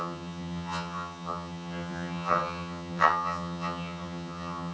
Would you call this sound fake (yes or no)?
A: yes